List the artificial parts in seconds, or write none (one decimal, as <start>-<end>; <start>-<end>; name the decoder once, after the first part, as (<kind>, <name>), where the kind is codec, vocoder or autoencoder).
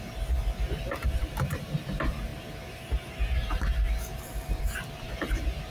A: 0.0-5.7 (vocoder, BigVGAN v2)